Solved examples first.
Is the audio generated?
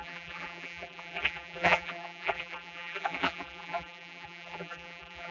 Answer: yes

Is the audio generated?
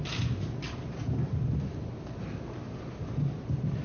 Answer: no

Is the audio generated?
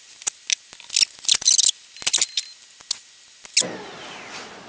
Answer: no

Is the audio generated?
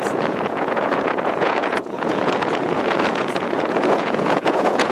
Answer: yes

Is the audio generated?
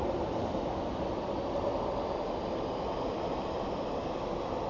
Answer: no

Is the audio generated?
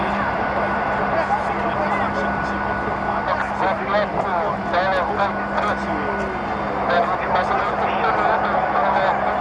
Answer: no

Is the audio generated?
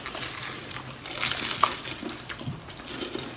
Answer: no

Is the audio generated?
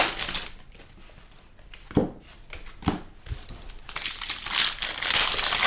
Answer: no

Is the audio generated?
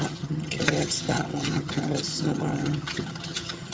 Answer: yes